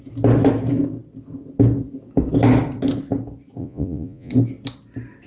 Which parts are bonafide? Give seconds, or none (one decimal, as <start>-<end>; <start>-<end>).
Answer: 0.0-3.6; 4.3-5.3